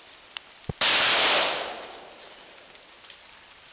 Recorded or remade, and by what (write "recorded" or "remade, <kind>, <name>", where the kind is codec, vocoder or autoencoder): recorded